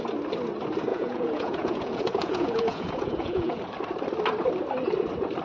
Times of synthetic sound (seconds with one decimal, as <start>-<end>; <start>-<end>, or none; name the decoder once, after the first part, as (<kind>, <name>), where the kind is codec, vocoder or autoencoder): 0.9-3.6 (vocoder, Vocos)